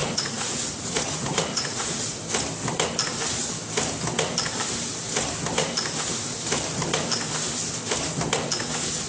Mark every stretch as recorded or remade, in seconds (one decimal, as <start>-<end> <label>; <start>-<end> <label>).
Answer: 0.0-2.2 remade; 2.2-9.1 recorded